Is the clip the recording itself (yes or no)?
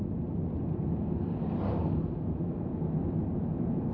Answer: yes